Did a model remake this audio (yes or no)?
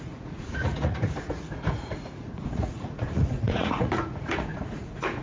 yes